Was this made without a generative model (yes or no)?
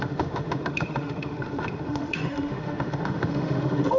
no